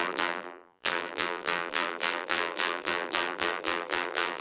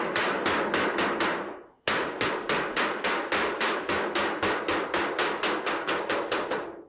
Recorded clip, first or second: second